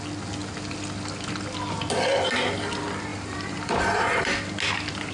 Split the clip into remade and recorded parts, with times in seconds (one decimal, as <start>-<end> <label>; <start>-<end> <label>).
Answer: 0.0-3.1 recorded; 3.1-4.2 remade; 4.2-5.1 recorded